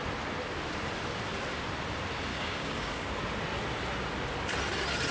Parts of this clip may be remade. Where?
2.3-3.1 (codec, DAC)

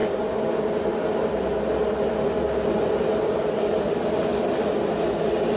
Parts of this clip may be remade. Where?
none

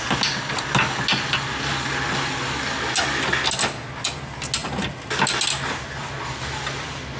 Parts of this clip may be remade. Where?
none

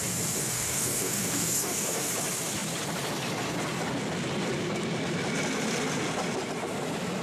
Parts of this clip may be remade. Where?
0.4-2.1 (codec, DAC)